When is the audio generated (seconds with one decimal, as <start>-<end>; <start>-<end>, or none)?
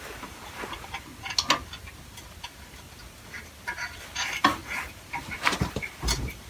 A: 0.0-1.1; 4.0-4.6; 5.1-6.5